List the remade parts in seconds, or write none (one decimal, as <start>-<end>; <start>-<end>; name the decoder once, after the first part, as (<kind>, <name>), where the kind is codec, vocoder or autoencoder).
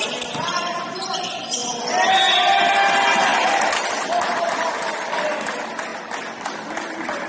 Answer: 3.3-3.9 (vocoder, BigVGAN v2)